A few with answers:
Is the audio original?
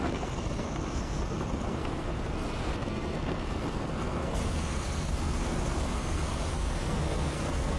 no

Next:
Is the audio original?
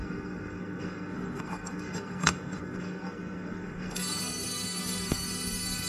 no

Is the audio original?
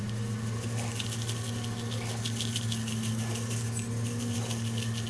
yes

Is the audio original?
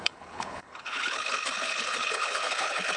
no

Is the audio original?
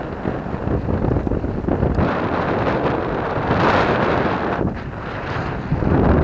yes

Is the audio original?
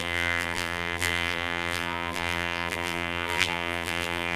no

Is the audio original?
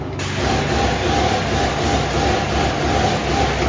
yes